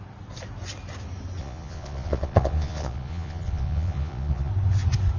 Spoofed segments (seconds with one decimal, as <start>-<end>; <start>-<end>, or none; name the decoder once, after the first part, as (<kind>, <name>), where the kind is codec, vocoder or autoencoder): 1.4-4.5 (vocoder, Vocos)